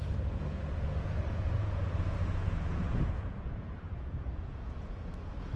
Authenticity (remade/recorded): remade